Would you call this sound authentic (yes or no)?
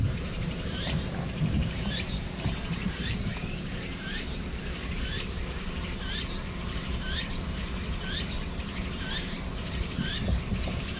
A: no